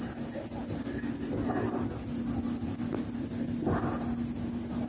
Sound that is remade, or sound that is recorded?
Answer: recorded